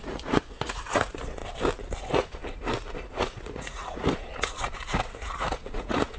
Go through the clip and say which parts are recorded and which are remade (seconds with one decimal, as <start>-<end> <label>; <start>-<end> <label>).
0.0-1.4 remade; 1.4-2.0 recorded; 2.0-2.4 remade; 2.4-3.1 recorded; 3.1-6.2 remade